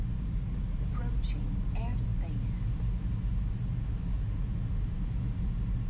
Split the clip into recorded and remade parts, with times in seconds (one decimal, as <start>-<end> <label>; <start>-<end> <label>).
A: 0.0-5.9 recorded